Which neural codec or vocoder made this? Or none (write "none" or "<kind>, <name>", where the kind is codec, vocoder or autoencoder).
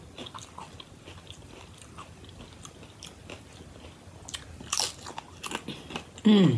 none